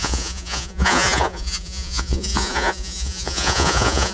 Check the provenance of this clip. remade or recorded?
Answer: remade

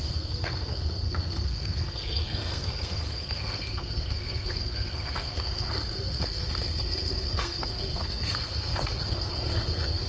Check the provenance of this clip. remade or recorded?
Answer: remade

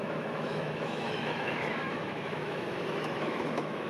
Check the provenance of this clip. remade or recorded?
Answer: remade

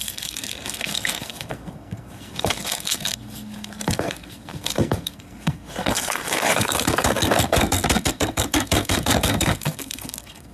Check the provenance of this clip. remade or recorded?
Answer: remade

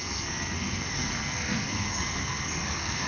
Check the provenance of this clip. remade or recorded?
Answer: remade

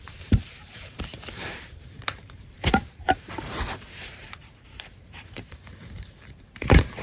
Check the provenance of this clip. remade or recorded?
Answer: remade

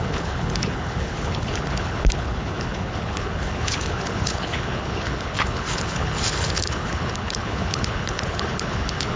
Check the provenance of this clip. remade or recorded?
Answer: remade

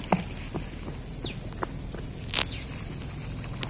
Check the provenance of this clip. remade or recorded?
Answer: recorded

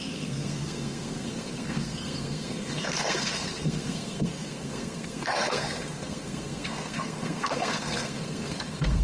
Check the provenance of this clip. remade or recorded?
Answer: remade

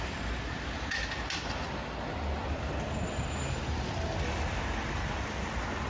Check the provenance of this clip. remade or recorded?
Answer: recorded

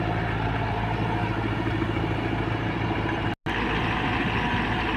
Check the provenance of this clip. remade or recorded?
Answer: recorded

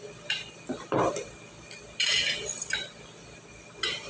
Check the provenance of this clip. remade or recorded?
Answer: recorded